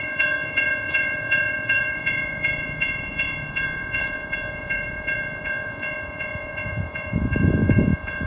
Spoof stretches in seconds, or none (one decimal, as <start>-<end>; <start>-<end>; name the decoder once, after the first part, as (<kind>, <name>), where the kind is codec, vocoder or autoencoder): 0.0-8.3 (vocoder, Vocos)